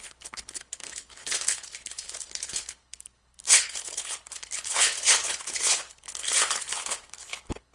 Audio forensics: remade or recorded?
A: remade